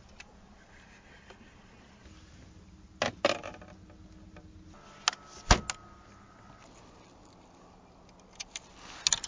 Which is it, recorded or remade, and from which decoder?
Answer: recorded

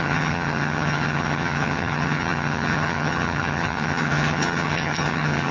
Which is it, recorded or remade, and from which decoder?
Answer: remade, vocoder, HiFi-GAN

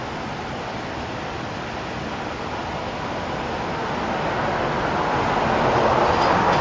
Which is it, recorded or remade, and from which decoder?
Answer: recorded